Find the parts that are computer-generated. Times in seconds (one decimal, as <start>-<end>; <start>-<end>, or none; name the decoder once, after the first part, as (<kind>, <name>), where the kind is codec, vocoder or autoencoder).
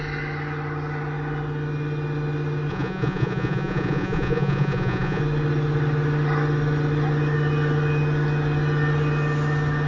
2.7-5.2 (vocoder, Vocos)